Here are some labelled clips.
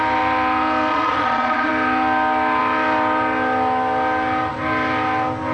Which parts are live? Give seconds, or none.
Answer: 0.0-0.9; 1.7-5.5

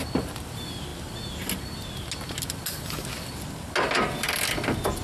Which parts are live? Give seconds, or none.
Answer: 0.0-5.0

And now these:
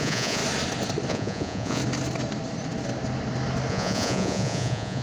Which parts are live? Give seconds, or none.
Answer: 0.4-1.1; 1.8-3.7

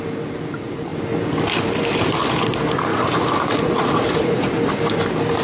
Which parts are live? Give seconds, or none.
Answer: 0.0-2.9; 4.5-5.4

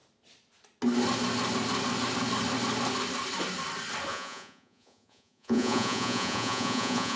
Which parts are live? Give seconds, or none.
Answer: 0.0-4.1